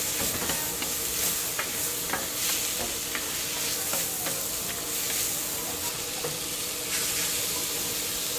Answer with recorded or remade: recorded